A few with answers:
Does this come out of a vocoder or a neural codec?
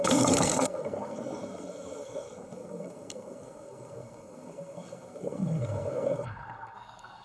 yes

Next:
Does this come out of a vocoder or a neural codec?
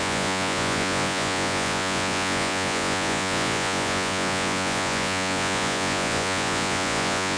yes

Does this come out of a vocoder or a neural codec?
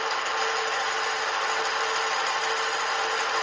no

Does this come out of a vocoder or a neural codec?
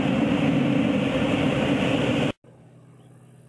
no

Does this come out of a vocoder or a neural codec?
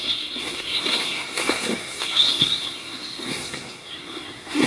yes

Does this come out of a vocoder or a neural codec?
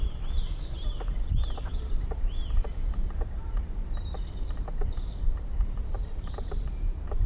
yes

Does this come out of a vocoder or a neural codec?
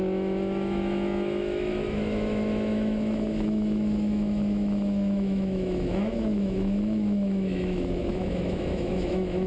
yes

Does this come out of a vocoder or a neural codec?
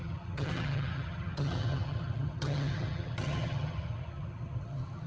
yes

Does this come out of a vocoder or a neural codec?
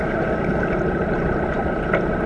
yes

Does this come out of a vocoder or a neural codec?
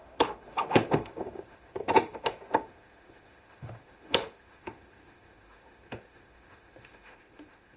yes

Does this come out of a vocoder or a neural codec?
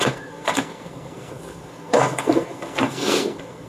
yes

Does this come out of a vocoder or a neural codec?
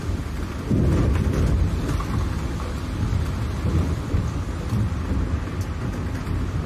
no